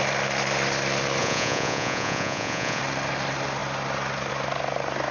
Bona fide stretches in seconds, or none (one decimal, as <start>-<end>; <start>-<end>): 0.0-1.2; 2.8-5.1